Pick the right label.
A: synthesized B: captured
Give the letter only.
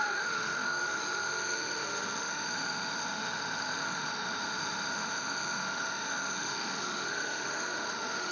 A